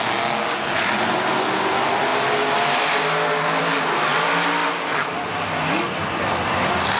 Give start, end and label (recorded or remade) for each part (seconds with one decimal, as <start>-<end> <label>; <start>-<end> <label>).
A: 0.0-7.0 recorded

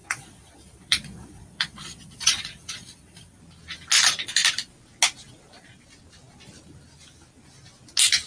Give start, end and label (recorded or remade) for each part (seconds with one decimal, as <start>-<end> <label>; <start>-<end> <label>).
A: 0.0-3.4 remade; 3.4-8.3 recorded

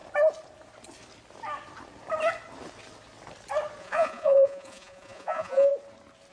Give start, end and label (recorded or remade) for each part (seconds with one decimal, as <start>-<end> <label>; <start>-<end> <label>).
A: 0.0-3.8 recorded; 3.8-5.7 remade; 5.7-6.3 recorded